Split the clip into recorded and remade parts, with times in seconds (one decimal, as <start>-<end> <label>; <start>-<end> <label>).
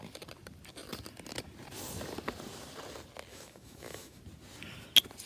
0.0-3.3 recorded; 3.3-4.2 remade; 4.2-5.3 recorded